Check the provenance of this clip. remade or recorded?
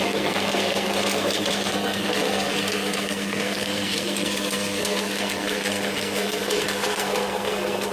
remade